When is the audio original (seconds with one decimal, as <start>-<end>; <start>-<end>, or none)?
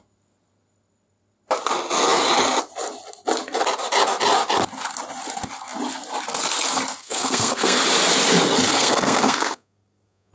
0.0-7.0; 7.8-8.7